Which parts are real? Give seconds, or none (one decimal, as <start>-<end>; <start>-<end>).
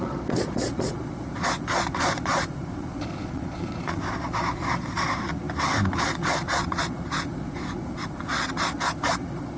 5.3-6.0